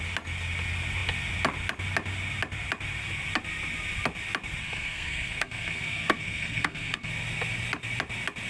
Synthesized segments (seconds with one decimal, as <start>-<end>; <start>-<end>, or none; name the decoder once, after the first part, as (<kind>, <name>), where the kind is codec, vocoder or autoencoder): 4.6-7.1 (codec, SNAC)